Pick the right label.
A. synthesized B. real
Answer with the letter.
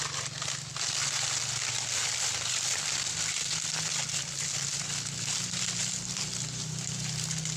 B